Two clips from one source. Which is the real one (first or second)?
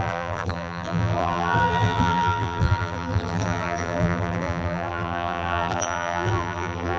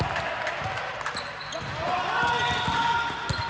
second